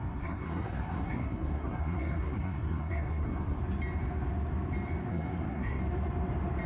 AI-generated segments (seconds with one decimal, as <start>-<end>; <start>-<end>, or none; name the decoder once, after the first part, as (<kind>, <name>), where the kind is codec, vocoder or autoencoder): 0.0-3.6 (codec, SNAC); 5.1-5.8